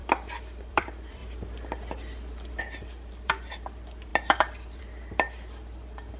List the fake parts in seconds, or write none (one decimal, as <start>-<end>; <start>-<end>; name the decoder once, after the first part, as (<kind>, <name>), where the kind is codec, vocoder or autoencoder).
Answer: 0.0-6.2 (vocoder, BigVGAN v2)